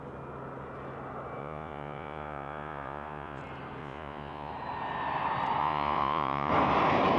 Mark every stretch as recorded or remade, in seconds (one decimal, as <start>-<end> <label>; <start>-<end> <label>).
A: 0.0-1.4 recorded; 1.4-3.4 remade; 3.4-3.8 recorded; 3.8-4.5 remade; 4.5-5.6 recorded; 5.6-6.5 remade; 6.5-7.2 recorded